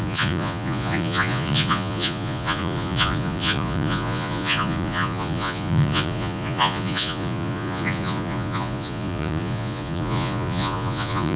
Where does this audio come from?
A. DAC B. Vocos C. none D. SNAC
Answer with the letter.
B